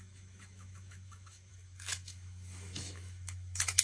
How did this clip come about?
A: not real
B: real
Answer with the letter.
A